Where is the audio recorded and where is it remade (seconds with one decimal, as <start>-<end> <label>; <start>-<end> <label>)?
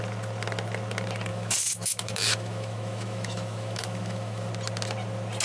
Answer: 0.0-1.3 recorded; 1.3-4.5 remade; 4.5-5.4 recorded